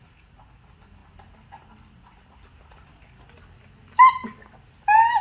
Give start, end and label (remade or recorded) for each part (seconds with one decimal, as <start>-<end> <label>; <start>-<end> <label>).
0.0-5.2 recorded